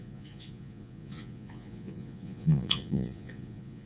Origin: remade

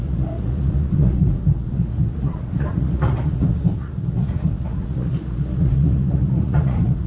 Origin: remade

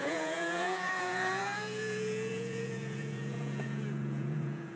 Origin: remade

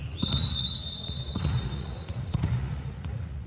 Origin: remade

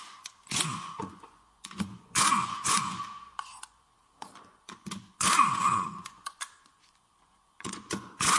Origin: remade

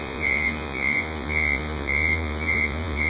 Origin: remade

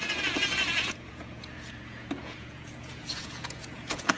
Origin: remade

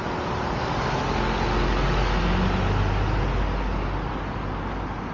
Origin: recorded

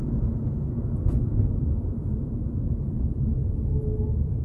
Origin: remade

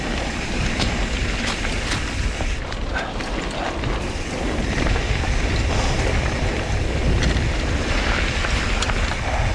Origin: recorded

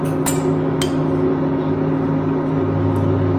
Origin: recorded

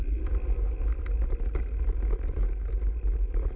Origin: recorded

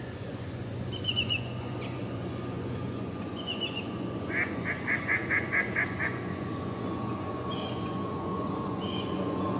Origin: remade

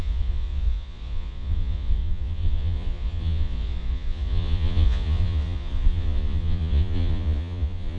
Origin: remade